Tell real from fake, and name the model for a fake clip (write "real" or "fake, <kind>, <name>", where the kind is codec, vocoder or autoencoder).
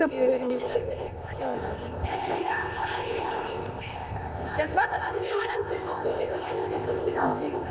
fake, codec, ZipCodec